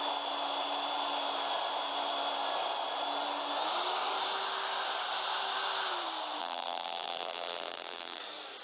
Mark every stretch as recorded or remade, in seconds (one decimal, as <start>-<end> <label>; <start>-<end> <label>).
0.0-6.4 recorded; 6.4-8.2 remade; 8.2-8.6 recorded